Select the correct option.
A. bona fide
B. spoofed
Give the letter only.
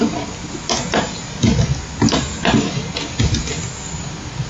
A